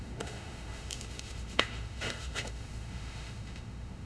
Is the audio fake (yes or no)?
yes